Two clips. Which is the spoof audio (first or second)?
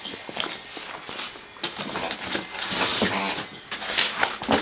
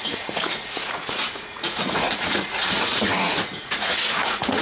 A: second